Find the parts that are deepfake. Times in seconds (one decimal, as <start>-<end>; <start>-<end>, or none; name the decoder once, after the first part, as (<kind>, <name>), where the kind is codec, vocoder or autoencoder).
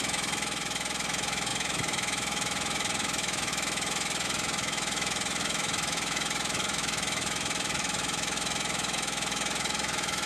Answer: 0.0-10.3 (autoencoder, DAC-VAE)